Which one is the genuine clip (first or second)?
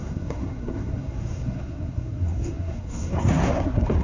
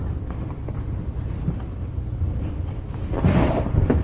second